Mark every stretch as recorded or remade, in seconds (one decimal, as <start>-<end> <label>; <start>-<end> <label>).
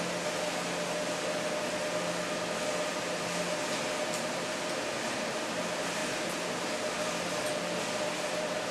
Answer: 0.0-8.7 recorded